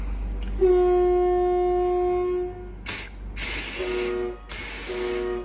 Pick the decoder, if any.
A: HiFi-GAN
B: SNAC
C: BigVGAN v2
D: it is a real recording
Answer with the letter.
D